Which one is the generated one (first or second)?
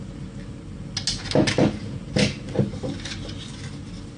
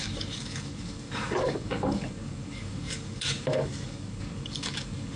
second